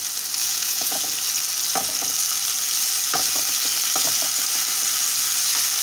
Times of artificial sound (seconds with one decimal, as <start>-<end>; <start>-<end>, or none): 0.4-1.0